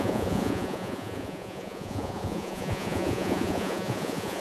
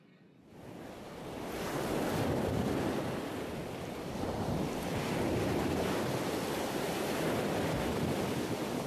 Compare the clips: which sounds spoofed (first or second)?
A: first